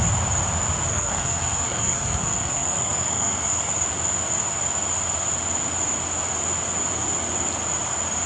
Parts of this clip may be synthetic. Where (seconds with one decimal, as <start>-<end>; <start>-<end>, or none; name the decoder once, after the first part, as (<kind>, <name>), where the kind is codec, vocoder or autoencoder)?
0.9-3.7 (codec, SNAC)